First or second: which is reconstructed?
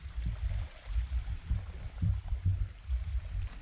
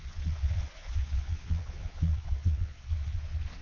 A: second